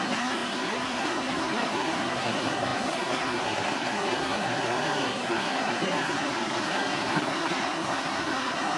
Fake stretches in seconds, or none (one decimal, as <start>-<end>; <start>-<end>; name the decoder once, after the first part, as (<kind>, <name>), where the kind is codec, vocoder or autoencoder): 0.0-8.8 (codec, SNAC)